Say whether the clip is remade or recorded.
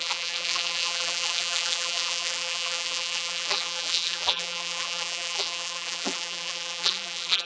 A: remade